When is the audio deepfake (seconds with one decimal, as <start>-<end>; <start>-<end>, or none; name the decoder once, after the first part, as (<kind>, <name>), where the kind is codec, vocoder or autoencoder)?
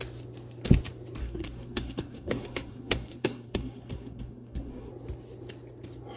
1.2-4.9 (codec, SNAC)